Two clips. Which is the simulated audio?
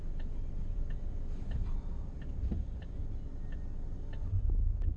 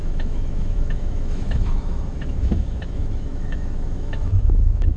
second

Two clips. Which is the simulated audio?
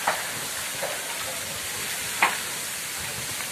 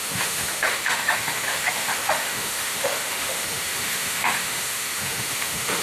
second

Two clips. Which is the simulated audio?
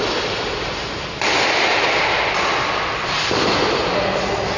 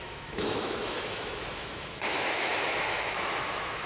second